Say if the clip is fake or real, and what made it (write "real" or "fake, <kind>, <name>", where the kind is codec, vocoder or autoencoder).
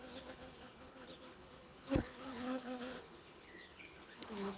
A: fake, codec, HILCodec